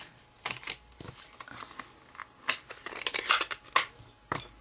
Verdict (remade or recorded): recorded